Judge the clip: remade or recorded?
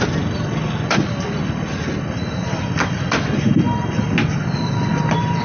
recorded